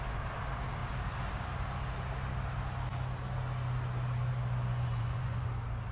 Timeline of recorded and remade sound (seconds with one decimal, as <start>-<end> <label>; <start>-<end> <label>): 0.0-4.7 recorded; 4.7-5.5 remade; 5.5-5.9 recorded